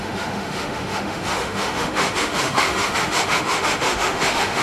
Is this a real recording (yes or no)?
no